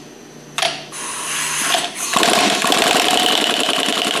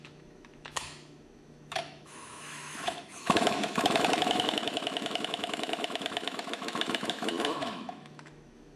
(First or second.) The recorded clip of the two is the first